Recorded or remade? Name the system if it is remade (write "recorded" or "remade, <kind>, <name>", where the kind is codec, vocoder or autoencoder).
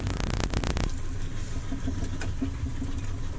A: recorded